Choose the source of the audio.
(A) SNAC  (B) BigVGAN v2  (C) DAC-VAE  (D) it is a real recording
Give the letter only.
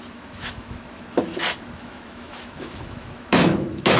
C